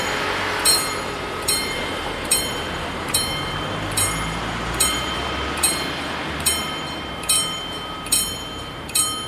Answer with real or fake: fake